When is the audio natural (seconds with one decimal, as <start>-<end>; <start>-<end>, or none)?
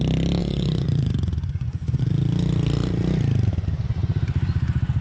0.0-0.4; 2.0-5.0